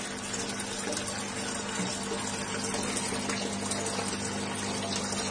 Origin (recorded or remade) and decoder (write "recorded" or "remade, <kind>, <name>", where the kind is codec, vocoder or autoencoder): recorded